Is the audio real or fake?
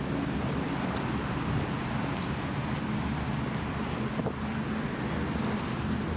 real